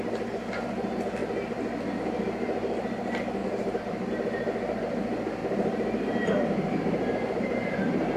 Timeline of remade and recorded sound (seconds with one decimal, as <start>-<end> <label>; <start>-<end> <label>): 0.0-3.4 recorded; 3.4-4.1 remade; 4.1-5.4 recorded; 5.4-8.2 remade